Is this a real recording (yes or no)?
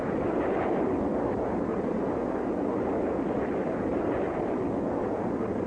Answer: yes